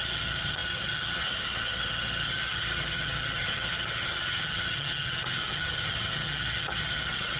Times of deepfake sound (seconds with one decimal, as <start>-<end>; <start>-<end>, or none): 0.0-7.4